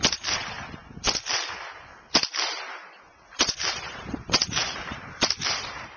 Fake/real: fake